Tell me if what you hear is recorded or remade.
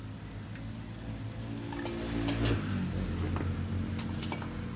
recorded